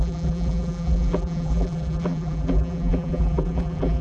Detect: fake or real fake